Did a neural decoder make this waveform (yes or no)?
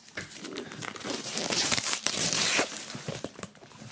yes